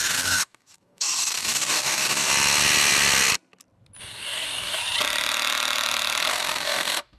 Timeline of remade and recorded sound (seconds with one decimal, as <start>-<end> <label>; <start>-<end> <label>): 0.0-2.3 remade; 2.3-4.0 recorded; 4.0-4.8 remade; 4.8-6.3 recorded; 6.3-7.2 remade